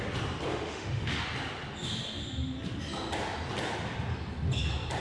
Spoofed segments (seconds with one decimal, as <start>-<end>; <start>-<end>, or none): 0.5-1.2